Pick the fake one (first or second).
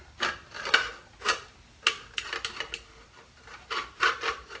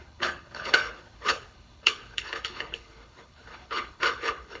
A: second